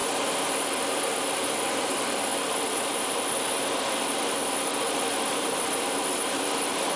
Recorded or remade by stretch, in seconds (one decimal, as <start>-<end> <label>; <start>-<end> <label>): 0.0-0.8 recorded; 0.8-7.0 remade